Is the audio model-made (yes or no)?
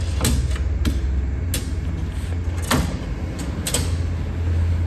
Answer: no